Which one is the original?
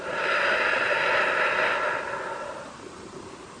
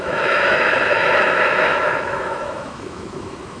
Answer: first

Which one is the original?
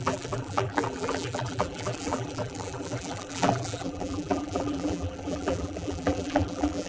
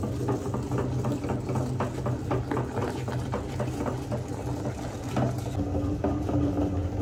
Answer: second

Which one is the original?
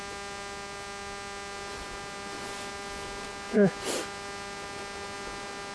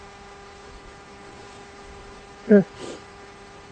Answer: first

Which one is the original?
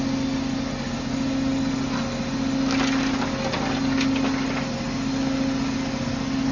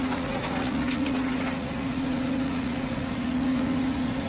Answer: first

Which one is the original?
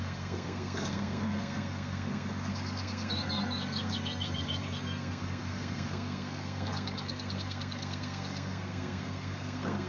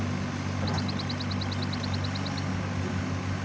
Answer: second